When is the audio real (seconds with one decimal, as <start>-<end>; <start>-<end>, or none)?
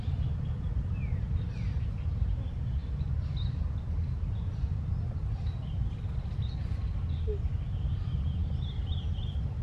0.0-9.6